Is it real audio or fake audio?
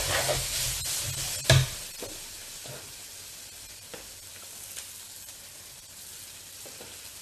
real